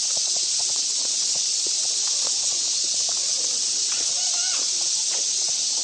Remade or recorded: remade